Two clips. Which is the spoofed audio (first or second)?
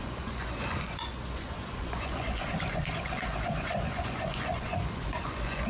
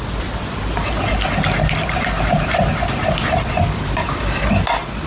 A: first